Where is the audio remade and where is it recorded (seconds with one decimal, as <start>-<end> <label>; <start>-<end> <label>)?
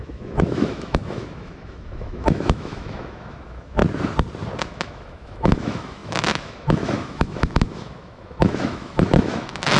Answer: 0.0-3.8 remade; 3.8-4.6 recorded; 4.6-9.8 remade